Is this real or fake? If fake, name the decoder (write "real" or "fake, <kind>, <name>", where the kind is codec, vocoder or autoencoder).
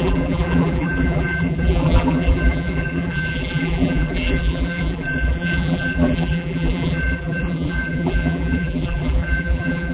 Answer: fake, vocoder, BigVGAN v2